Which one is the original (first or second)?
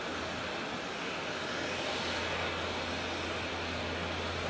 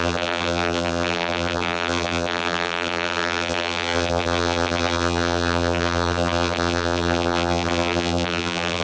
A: first